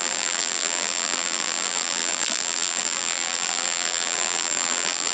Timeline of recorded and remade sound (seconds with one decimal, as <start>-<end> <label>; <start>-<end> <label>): 0.0-5.1 remade